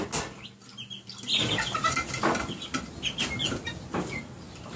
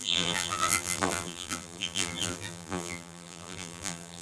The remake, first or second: second